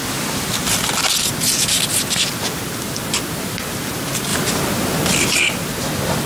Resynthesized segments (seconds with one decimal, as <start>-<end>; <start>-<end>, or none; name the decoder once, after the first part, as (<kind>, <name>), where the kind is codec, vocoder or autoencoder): none